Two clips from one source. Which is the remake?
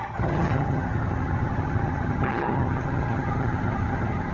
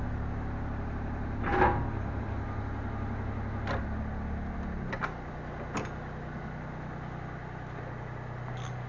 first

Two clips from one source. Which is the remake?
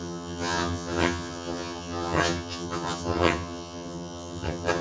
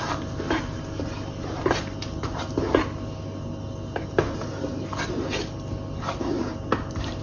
first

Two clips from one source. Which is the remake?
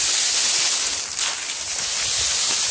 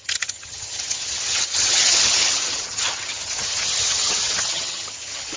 second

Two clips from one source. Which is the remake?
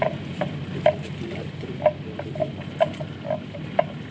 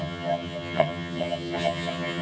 second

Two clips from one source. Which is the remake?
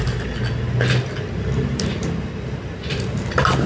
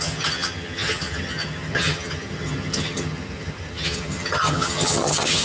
second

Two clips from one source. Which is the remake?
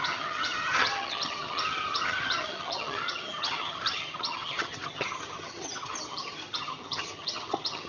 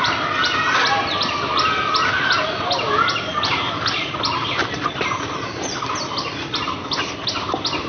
first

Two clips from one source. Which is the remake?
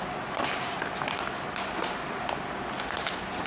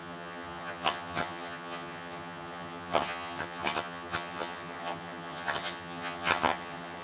second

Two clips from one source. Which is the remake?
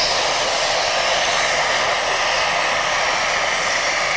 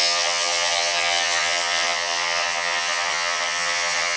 second